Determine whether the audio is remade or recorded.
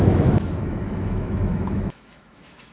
remade